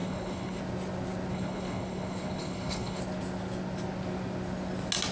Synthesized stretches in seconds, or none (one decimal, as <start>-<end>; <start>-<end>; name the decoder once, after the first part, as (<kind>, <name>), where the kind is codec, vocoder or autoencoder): 0.0-0.6 (codec, HILCodec); 1.3-3.0